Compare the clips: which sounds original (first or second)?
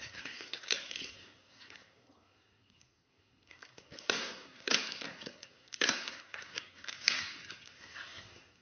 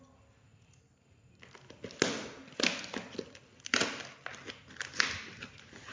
second